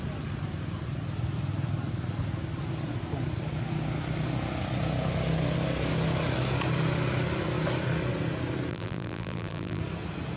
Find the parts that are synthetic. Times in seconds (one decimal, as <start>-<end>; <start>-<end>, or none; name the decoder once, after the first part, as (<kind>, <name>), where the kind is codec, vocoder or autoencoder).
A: 8.7-9.8 (vocoder, BigVGAN v2)